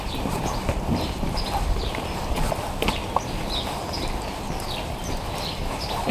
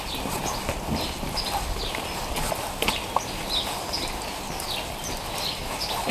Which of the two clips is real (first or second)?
second